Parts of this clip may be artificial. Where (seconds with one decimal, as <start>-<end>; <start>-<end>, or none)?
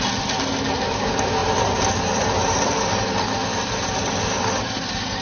none